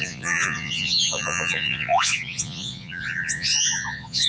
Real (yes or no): no